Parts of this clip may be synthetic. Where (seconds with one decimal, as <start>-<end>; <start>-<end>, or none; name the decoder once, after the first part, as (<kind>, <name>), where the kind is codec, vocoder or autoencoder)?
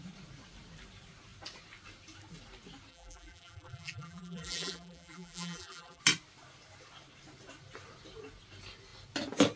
2.9-6.0 (vocoder, BigVGAN v2)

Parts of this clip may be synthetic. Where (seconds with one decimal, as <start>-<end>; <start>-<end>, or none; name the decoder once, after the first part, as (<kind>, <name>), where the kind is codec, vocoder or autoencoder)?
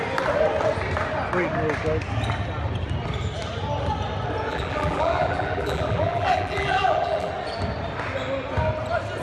4.5-7.3 (vocoder, BigVGAN v2)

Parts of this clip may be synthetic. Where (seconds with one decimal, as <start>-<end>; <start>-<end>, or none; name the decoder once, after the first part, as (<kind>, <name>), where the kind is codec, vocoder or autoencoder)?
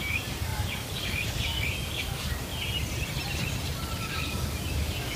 0.0-2.5 (codec, DAC); 4.0-5.2